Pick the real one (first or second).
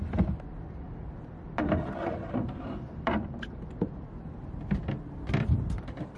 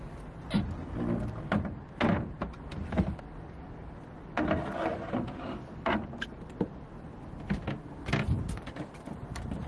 second